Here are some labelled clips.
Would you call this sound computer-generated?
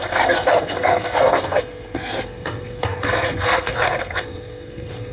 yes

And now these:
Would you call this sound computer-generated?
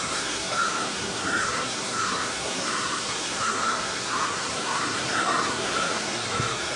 yes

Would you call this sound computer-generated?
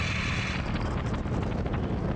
no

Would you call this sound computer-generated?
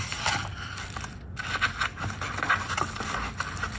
no